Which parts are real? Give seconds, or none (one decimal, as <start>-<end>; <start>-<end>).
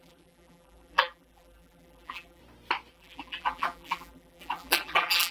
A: 2.4-2.9